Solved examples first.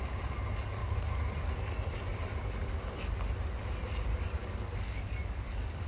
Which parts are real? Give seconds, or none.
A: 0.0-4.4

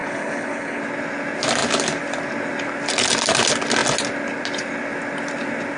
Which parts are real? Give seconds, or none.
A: 0.8-5.8

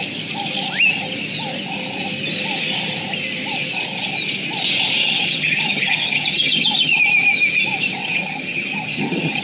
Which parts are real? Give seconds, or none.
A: 0.0-5.0; 7.0-8.0

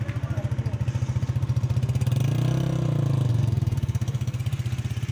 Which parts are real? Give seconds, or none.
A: 0.0-3.3; 4.4-5.1

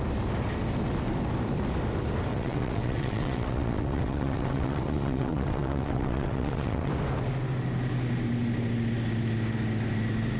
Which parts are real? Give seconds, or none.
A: 0.0-2.3; 6.9-10.4

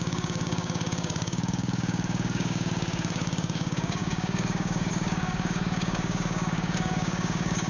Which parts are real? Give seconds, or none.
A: none

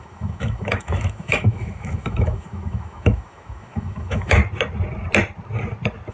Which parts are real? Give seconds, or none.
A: 4.4-6.1